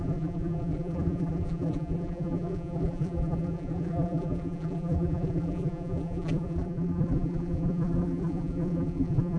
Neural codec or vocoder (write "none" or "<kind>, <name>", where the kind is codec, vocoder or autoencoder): vocoder, BigVGAN v2